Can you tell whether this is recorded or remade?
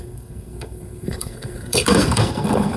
remade